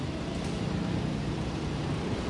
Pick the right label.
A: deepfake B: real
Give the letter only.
B